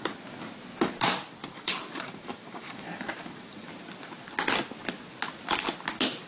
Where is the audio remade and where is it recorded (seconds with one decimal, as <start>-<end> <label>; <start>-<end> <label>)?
0.0-1.4 recorded; 1.4-3.7 remade; 3.7-6.3 recorded